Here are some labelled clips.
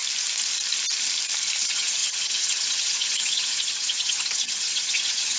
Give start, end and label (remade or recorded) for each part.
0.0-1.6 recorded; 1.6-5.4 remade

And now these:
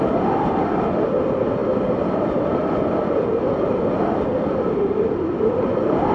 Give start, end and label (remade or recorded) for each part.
0.0-6.1 recorded

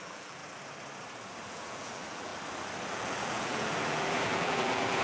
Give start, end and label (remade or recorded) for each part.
0.0-0.4 remade; 0.4-1.5 recorded; 1.5-2.3 remade; 2.3-2.9 recorded; 2.9-5.0 remade

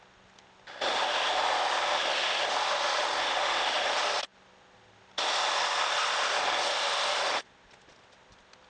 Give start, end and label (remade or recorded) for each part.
0.0-8.7 recorded

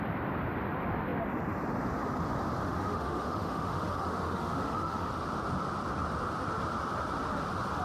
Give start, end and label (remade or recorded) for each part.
0.0-2.6 recorded; 2.6-5.1 remade; 5.1-7.8 recorded

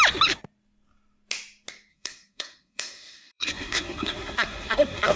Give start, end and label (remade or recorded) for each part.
0.0-1.9 recorded; 1.9-5.2 remade